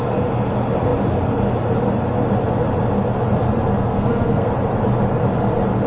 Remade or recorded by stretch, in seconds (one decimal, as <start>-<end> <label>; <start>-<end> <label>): 0.0-3.8 recorded; 3.8-4.5 remade; 4.5-5.9 recorded